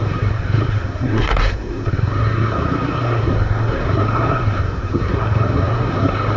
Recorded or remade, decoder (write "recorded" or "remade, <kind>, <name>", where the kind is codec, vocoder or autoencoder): remade, codec, SNAC